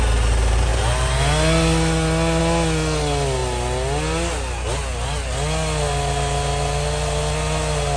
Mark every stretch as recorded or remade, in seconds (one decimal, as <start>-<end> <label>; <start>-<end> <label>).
0.0-8.0 recorded